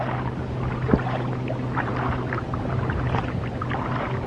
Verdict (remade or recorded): recorded